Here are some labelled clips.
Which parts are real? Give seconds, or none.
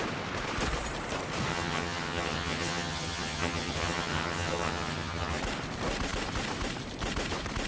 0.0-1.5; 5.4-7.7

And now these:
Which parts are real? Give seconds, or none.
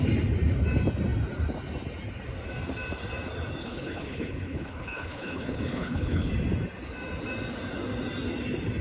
0.0-3.6; 6.3-8.8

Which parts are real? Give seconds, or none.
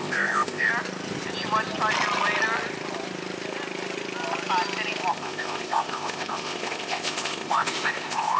0.7-5.1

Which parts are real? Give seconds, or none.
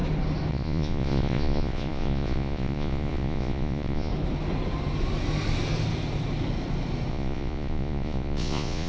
0.0-0.5; 4.1-7.1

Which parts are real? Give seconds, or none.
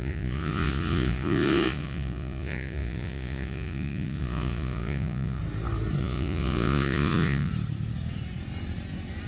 5.4-6.0; 7.5-9.3